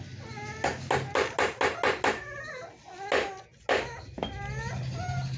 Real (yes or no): yes